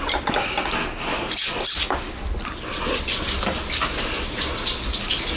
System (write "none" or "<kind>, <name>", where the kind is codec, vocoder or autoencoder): none